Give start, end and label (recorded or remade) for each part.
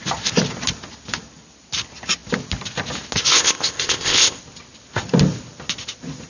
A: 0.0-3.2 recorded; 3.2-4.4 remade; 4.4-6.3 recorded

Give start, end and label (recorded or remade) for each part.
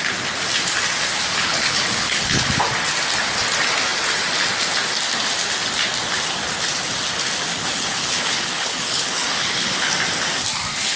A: 0.0-1.3 recorded; 1.3-2.6 remade; 2.6-7.5 recorded; 7.5-9.9 remade; 9.9-11.0 recorded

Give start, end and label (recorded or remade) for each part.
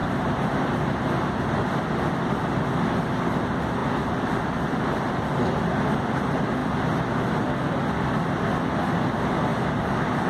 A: 0.0-1.4 remade; 1.4-9.5 recorded; 9.5-10.3 remade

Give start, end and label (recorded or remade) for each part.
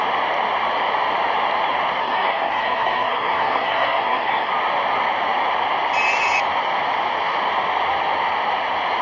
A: 0.0-2.0 recorded; 2.0-4.5 remade; 4.5-9.0 recorded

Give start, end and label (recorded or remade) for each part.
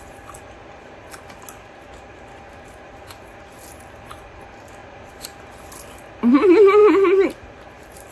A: 0.0-8.1 recorded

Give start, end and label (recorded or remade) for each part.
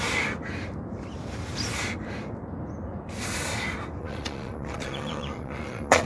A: 0.0-4.0 recorded; 4.0-6.1 remade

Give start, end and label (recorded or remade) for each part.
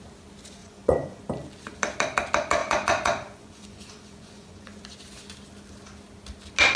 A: 0.0-0.6 recorded; 0.6-1.2 remade; 1.2-2.6 recorded; 2.6-4.8 remade; 4.8-6.8 recorded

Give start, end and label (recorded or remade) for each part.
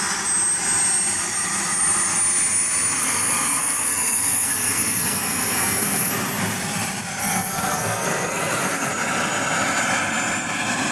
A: 0.0-3.0 recorded; 3.0-6.1 remade; 6.1-7.2 recorded; 7.2-8.9 remade; 8.9-10.9 recorded